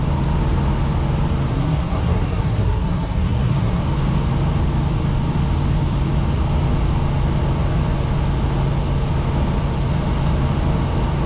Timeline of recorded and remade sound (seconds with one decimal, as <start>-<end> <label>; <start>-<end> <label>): 0.0-1.5 recorded; 1.5-3.8 remade; 3.8-11.3 recorded